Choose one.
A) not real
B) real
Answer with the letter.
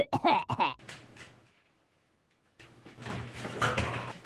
A